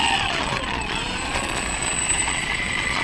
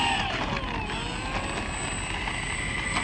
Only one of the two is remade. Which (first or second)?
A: first